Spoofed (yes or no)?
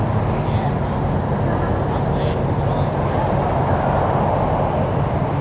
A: no